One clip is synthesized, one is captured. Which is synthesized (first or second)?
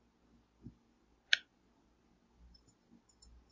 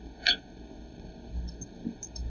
second